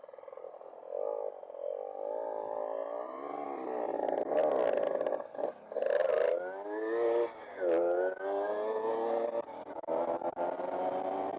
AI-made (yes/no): no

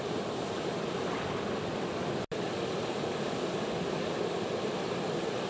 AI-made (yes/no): no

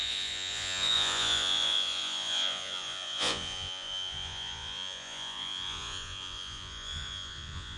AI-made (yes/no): yes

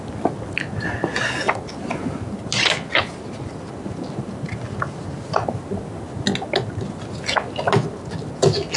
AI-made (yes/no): no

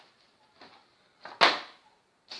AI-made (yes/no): no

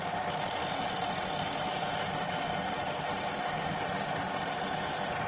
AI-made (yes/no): no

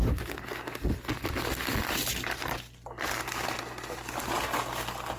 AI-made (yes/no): no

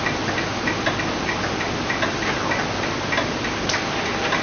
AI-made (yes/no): no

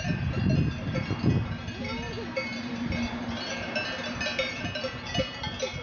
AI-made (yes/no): yes